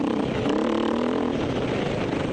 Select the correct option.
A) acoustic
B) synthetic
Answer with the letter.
A